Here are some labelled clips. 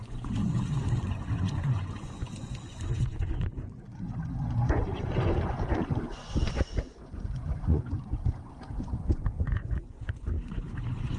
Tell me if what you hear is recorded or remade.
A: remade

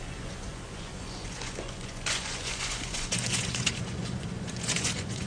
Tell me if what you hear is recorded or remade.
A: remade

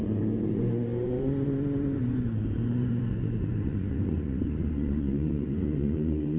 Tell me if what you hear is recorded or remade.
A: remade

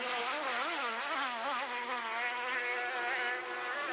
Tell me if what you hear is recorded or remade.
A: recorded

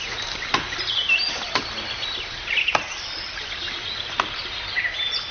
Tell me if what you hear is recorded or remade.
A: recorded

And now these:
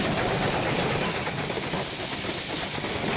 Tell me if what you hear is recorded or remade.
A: recorded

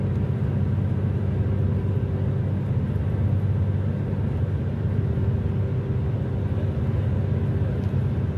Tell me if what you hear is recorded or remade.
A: recorded